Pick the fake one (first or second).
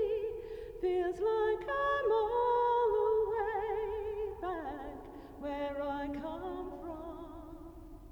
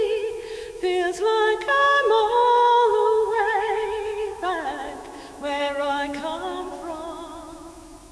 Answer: second